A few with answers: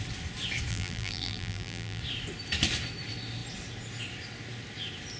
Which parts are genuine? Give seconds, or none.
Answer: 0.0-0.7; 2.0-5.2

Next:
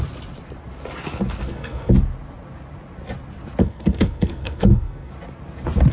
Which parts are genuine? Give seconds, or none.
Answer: 0.0-1.4; 1.9-3.6; 5.1-5.9

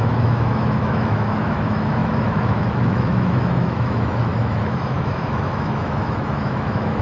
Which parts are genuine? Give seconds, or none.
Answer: none

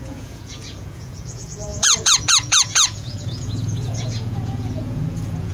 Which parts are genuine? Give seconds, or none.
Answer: none

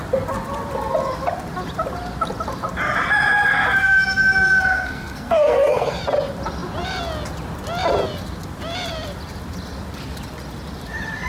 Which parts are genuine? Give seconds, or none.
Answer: 0.0-3.8; 6.0-11.3

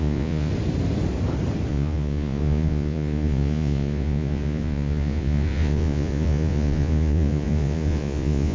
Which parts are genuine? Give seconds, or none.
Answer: 0.5-1.7

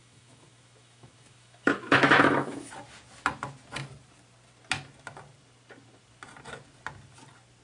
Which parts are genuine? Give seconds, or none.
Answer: 2.7-7.6

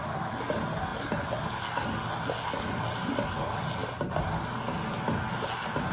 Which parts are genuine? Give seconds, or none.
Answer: 0.0-5.9